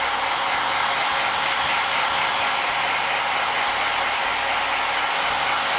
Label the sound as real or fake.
real